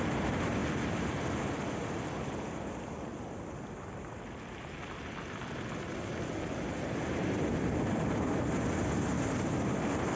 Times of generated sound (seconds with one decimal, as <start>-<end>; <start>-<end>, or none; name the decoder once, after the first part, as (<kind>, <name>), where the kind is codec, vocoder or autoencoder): none